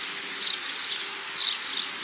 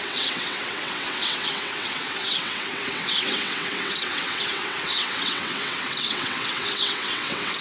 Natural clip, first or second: first